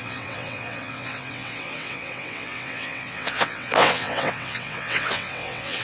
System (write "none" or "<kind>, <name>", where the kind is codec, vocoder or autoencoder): vocoder, WaveNeXt